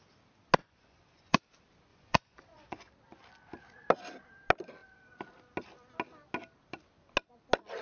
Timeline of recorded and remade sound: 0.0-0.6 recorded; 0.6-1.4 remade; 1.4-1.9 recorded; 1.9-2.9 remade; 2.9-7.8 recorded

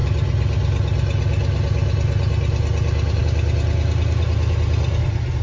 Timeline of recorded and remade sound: 0.0-5.4 recorded

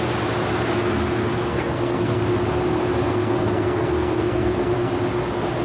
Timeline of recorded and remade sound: 0.0-1.3 recorded; 1.3-2.2 remade; 2.2-3.1 recorded; 3.1-4.9 remade; 4.9-5.6 recorded

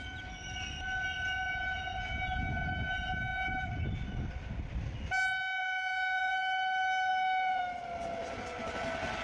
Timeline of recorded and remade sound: 0.0-5.6 recorded; 5.6-6.3 remade; 6.3-7.1 recorded; 7.1-7.6 remade; 7.6-9.2 recorded